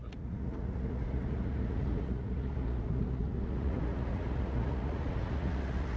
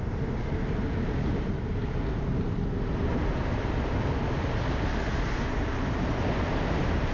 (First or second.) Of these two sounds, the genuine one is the second